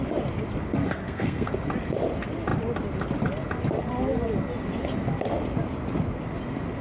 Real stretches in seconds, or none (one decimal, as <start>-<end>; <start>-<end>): 0.0-0.8; 1.5-6.8